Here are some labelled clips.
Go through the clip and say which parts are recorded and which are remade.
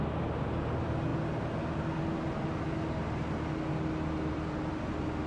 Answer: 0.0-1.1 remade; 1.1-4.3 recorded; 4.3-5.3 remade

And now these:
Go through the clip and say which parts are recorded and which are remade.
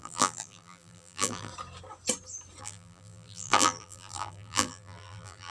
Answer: 0.0-1.5 remade; 1.5-2.6 recorded; 2.6-5.5 remade